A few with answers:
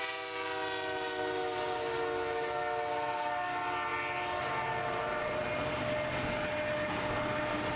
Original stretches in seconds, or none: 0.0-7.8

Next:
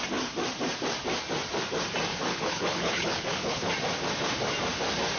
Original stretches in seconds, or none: 0.0-2.1; 3.7-5.2

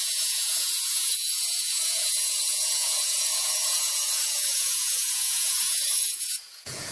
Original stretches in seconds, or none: none

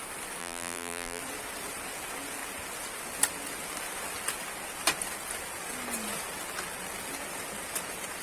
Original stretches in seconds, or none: 0.0-0.4; 1.2-8.2

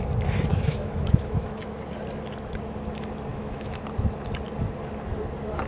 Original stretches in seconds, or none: 0.0-0.5; 1.6-3.3; 3.8-5.7

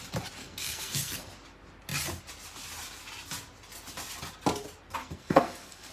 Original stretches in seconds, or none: 0.0-0.4; 1.3-5.0